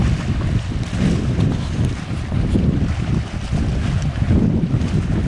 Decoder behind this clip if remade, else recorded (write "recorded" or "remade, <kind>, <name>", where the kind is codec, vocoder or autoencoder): remade, vocoder, BigVGAN v2